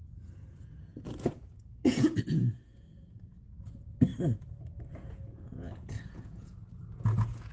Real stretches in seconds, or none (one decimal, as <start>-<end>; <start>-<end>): 4.1-4.9